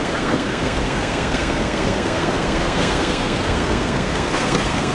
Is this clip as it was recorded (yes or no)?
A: no